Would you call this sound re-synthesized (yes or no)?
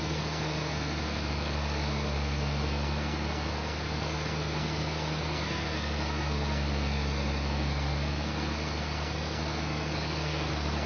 yes